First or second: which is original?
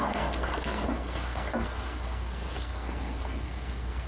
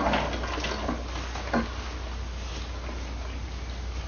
second